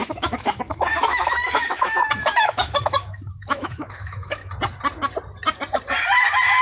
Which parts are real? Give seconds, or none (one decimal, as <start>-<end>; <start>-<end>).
4.4-6.6